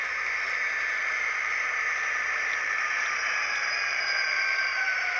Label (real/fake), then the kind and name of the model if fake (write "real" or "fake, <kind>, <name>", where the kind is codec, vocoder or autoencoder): fake, vocoder, BigVGAN v2